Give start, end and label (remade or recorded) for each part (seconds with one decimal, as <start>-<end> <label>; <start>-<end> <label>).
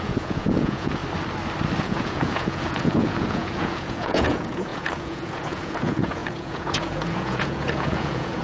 0.0-1.0 remade; 1.0-1.8 recorded; 1.8-8.4 remade